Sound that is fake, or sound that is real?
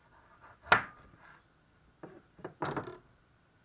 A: real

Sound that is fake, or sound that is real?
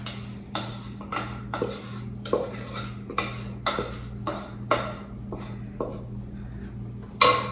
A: real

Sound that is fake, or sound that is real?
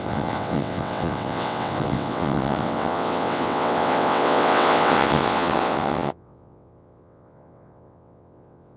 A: fake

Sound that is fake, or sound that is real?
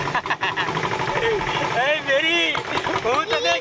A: real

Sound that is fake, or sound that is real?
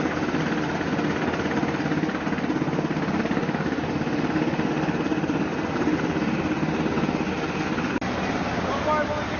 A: real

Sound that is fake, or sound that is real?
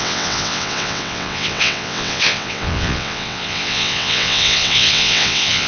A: fake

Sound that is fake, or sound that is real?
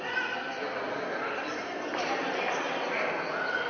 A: real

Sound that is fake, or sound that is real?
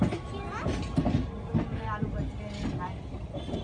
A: real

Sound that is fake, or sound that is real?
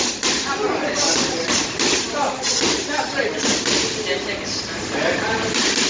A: real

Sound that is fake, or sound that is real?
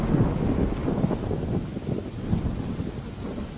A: real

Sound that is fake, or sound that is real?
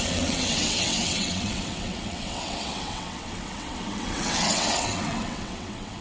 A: fake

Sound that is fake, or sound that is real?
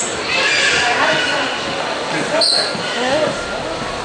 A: real